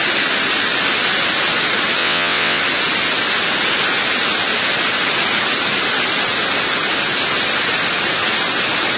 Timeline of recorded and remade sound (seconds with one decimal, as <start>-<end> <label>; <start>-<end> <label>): 0.0-2.0 recorded; 2.0-2.6 remade; 2.6-9.0 recorded